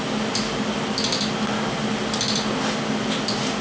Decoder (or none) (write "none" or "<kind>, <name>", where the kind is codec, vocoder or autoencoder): none